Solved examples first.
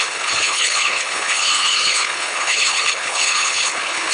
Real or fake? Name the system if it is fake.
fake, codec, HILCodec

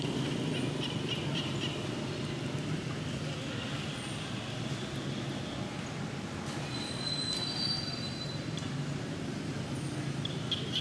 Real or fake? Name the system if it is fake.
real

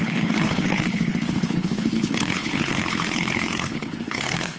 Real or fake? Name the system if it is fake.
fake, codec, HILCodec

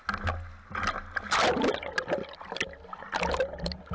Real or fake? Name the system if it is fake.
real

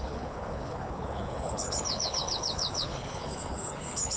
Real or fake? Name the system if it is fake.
fake, codec, HILCodec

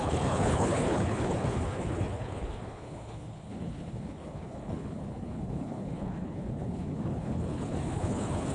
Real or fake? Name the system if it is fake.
fake, codec, HILCodec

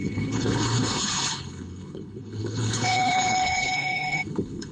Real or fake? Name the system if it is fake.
fake, codec, HILCodec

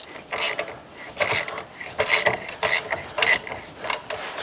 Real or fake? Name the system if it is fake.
real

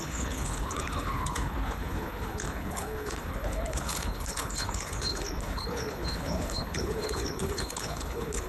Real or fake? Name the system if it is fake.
fake, codec, HILCodec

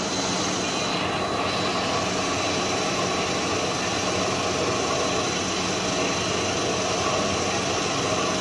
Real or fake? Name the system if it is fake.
real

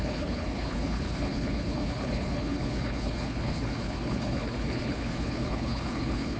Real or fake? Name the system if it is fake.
fake, codec, HILCodec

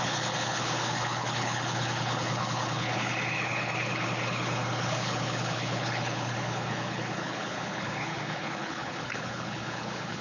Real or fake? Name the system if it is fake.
fake, codec, HILCodec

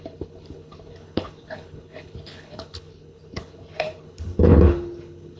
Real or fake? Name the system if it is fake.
fake, codec, HILCodec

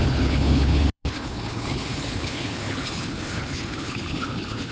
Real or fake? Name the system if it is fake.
fake, codec, HILCodec